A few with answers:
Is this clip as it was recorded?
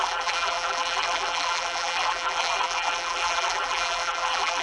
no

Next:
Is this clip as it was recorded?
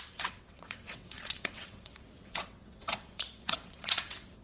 no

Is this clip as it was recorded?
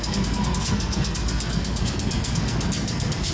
no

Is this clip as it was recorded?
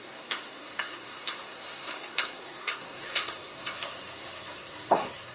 no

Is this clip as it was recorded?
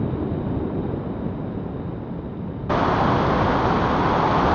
yes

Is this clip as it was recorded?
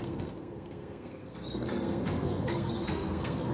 no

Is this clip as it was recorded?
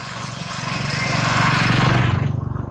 no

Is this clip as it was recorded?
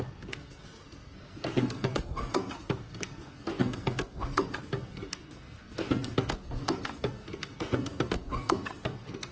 no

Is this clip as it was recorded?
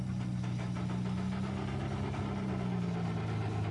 yes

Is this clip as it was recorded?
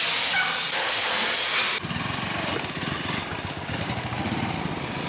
yes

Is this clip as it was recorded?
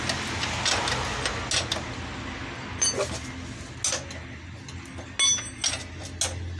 yes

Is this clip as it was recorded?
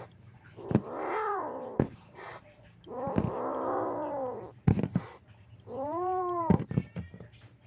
no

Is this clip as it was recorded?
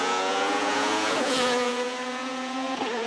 no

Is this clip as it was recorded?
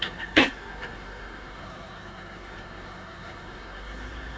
no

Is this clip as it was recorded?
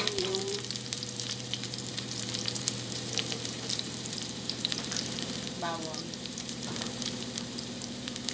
no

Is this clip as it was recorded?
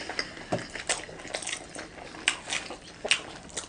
yes